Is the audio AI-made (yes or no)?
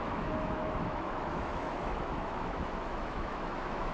yes